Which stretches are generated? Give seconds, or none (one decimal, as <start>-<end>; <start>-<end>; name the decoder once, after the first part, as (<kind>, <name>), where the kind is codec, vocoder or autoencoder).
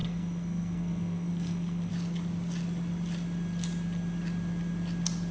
0.0-1.9 (codec, SNAC)